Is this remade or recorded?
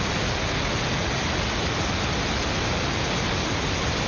recorded